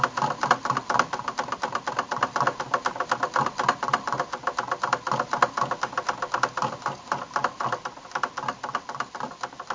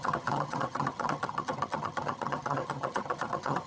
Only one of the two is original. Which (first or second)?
first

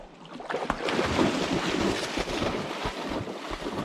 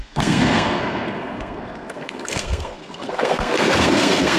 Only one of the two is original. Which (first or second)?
first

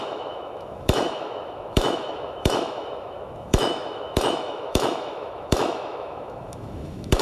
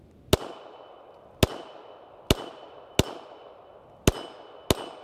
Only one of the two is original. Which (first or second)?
second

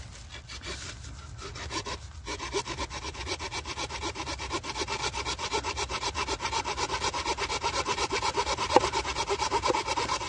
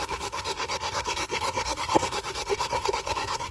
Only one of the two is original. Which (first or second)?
first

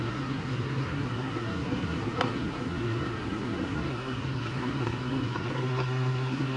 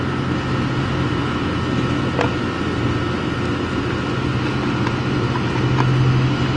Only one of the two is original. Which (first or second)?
second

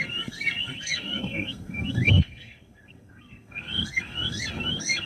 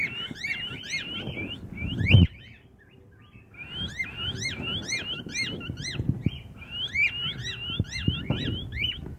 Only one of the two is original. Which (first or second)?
second